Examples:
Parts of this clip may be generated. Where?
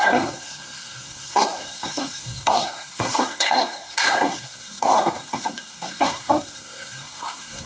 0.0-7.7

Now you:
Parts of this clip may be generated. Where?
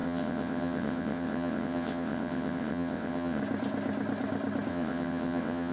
0.0-3.4; 4.7-5.7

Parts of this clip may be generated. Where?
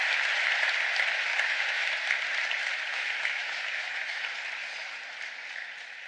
1.3-1.9; 2.9-4.2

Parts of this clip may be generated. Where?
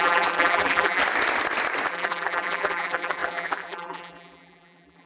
0.0-1.0; 1.9-5.1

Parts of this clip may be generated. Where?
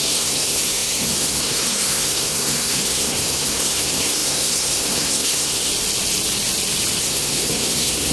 0.0-5.7; 7.0-8.1